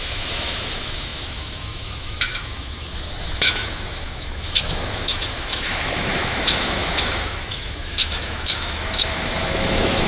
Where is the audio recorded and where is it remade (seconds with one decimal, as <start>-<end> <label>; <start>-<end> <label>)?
0.0-10.1 remade